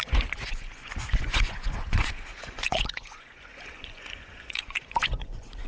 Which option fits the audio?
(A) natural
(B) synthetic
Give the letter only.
B